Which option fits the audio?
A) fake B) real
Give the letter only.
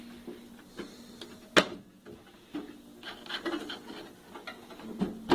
B